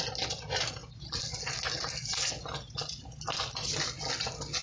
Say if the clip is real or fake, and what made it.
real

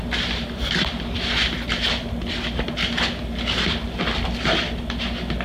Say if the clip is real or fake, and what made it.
real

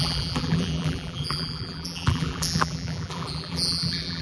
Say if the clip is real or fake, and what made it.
fake, vocoder, BigVGAN v2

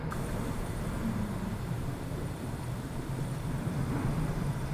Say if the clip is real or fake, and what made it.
fake, vocoder, BigVGAN v2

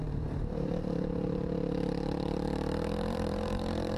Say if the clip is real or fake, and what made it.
fake, vocoder, BigVGAN v2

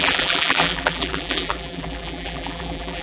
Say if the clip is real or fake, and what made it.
fake, vocoder, BigVGAN v2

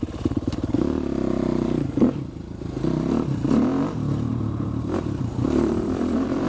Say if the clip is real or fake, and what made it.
fake, vocoder, BigVGAN v2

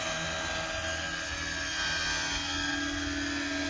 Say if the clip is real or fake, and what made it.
real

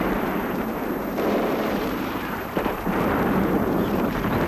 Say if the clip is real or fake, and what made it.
fake, vocoder, BigVGAN v2